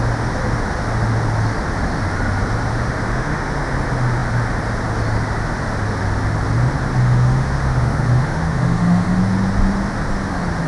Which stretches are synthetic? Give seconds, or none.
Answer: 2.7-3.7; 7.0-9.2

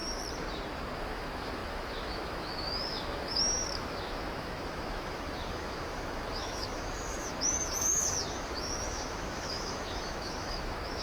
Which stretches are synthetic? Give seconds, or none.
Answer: 1.0-11.0

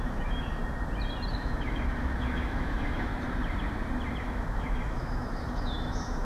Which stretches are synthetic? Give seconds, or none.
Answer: 0.0-0.6; 1.3-3.1; 4.2-6.2

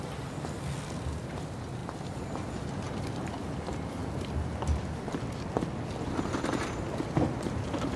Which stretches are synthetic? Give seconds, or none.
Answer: none

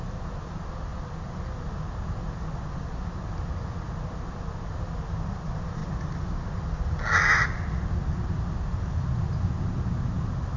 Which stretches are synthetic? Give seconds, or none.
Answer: none

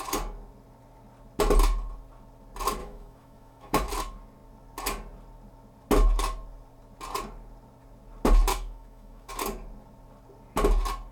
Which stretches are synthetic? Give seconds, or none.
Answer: 2.8-3.9; 8.5-9.3

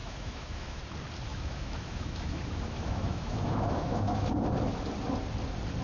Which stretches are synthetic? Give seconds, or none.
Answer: 0.0-0.8; 1.3-4.3